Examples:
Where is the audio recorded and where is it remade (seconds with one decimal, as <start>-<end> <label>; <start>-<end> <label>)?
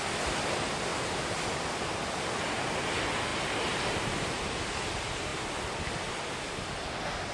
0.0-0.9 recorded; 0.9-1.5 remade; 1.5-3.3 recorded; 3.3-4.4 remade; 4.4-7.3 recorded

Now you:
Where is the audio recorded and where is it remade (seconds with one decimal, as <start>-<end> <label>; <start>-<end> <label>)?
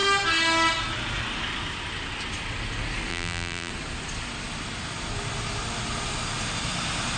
0.0-3.1 recorded; 3.1-3.7 remade; 3.7-7.2 recorded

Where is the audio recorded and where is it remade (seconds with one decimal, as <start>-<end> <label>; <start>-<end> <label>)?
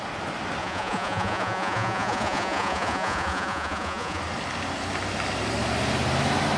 0.0-0.6 recorded; 0.6-4.2 remade; 4.2-6.6 recorded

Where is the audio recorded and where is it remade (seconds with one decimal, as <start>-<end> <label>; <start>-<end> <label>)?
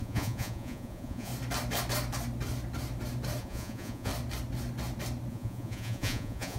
0.0-1.3 remade; 1.3-3.4 recorded; 3.4-4.1 remade; 4.1-5.3 recorded; 5.3-6.6 remade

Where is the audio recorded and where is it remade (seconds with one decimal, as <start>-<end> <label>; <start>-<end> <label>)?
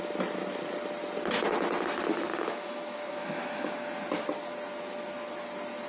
0.0-2.3 recorded; 2.3-3.7 remade; 3.7-5.9 recorded